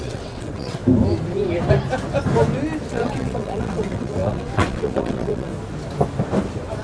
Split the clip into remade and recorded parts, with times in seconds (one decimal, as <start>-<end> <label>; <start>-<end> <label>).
0.0-0.8 remade; 0.8-2.9 recorded; 2.9-5.5 remade; 5.5-6.8 recorded